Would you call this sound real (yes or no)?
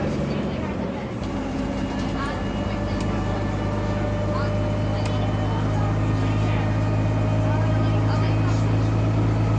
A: yes